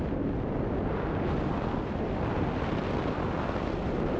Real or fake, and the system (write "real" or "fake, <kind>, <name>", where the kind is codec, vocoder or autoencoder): real